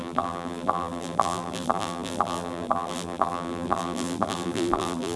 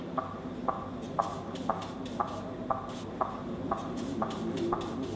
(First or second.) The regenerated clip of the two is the first